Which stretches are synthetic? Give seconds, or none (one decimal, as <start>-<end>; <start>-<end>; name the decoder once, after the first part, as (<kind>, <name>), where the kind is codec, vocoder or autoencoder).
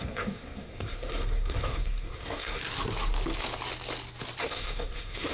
0.0-2.6 (codec, SNAC); 4.4-5.3